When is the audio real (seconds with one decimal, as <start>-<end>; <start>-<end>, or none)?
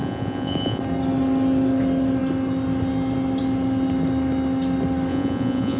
0.8-5.1